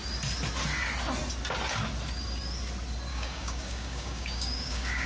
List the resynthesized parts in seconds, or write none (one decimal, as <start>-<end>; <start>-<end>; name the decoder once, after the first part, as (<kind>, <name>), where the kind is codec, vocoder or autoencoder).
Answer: 3.1-5.1 (codec, DAC)